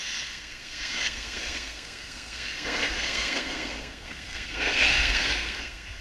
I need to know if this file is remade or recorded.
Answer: remade